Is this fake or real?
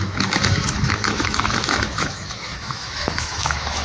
fake